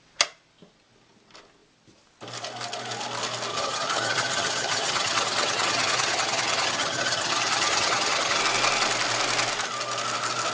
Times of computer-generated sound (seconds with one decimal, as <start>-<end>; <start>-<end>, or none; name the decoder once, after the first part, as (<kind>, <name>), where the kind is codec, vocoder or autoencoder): 3.5-8.4 (vocoder, HiFi-GAN)